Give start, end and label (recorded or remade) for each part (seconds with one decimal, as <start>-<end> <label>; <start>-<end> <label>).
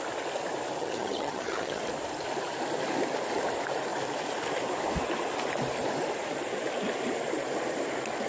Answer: 0.0-0.8 recorded; 0.8-1.8 remade; 1.8-8.3 recorded